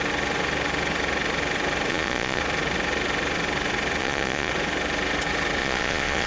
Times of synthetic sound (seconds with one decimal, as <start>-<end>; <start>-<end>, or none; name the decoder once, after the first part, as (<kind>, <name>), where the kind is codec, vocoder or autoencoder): 1.9-2.4 (vocoder, Vocos); 4.0-4.5; 5.6-6.3